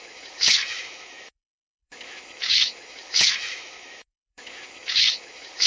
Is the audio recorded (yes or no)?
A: no